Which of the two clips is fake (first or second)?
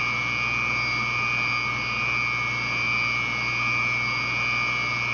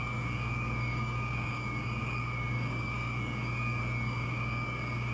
second